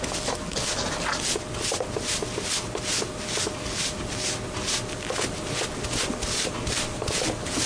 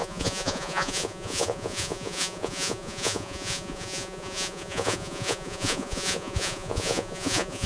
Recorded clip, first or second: first